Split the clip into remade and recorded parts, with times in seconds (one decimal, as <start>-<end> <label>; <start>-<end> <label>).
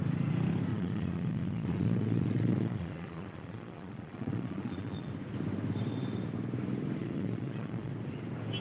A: 0.0-0.7 recorded; 0.7-5.1 remade; 5.1-7.0 recorded; 7.0-7.9 remade; 7.9-8.6 recorded